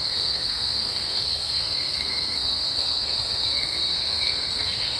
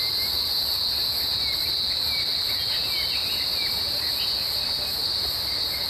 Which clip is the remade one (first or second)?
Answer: first